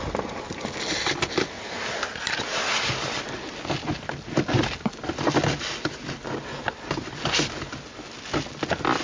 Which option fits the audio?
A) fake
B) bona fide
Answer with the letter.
B